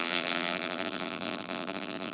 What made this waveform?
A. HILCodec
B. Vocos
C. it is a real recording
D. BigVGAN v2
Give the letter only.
D